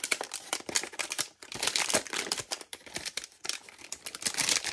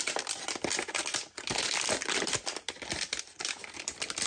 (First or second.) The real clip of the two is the second